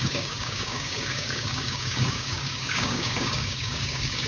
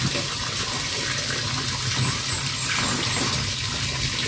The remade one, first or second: first